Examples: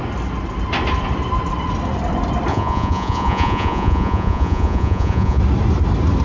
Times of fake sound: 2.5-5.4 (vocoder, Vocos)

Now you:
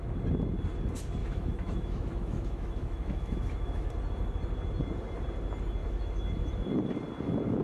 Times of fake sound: 1.2-3.9 (autoencoder, DAC-VAE); 5.8-6.5

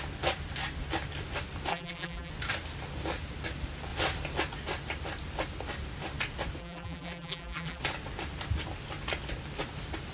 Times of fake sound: 1.7-2.3 (vocoder, BigVGAN v2); 6.6-7.8

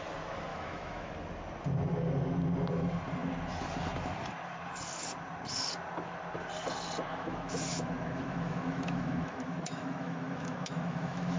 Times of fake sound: 0.5-1.1 (autoencoder, DAC-VAE); 7.1-11.4

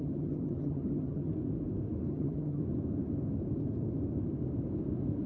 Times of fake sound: 0.0-1.3 (vocoder, HiFi-GAN); 2.1-2.6